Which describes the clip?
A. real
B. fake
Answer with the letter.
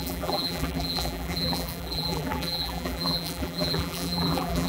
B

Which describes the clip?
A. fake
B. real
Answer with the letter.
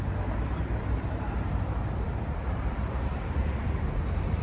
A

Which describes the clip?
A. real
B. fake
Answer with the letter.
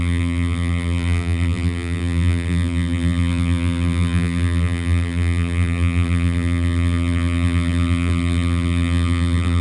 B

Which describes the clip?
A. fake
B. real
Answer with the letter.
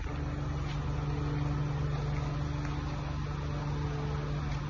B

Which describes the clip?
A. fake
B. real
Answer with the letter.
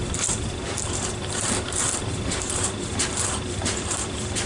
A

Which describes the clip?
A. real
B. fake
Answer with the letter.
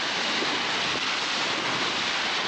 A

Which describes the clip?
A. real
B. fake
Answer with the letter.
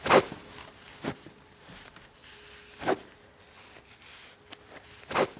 A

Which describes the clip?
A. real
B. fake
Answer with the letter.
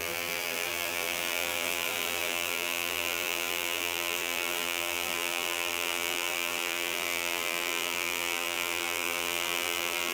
B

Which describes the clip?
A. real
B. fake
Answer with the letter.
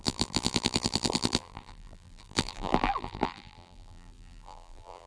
B